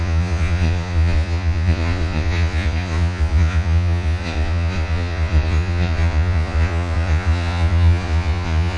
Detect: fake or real fake